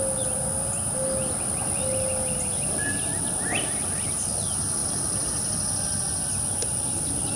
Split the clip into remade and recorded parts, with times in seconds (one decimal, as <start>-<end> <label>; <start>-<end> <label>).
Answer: 0.0-7.4 recorded